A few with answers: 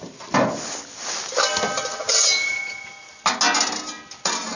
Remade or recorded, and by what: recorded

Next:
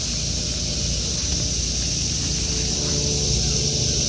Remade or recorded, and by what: recorded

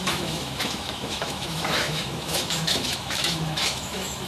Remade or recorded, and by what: remade, autoencoder, DAC-VAE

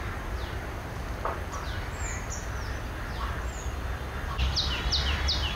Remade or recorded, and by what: recorded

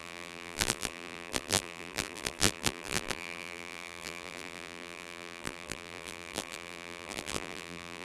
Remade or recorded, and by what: remade, vocoder, BigVGAN v2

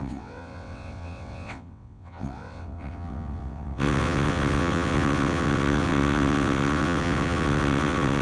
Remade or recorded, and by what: remade, vocoder, WaveNeXt